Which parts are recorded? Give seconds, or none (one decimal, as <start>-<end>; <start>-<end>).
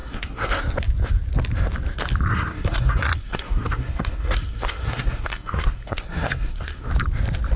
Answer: 0.6-2.3; 6.9-7.6